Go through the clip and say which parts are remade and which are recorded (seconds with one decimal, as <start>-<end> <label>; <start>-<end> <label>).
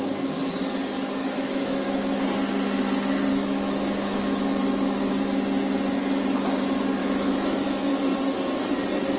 0.0-1.2 recorded; 1.2-2.2 remade; 2.2-3.3 recorded; 3.3-5.1 remade; 5.1-7.0 recorded; 7.0-7.9 remade; 7.9-9.2 recorded